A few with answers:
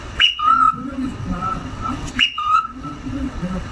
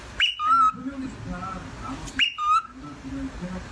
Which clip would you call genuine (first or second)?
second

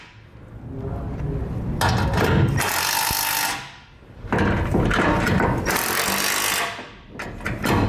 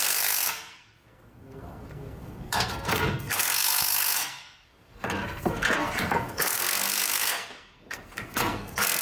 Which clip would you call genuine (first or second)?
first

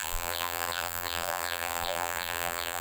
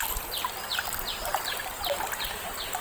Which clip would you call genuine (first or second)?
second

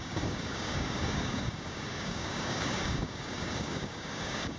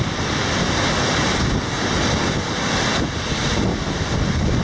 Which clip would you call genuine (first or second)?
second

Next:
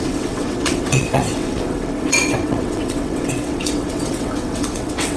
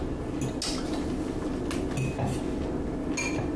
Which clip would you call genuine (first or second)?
second